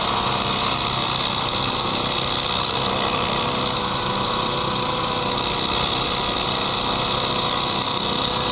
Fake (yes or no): no